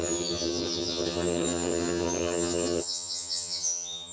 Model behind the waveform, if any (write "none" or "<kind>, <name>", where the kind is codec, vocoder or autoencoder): vocoder, HiFi-GAN